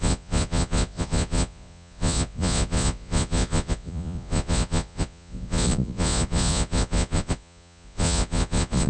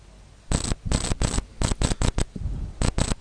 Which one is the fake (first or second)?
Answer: first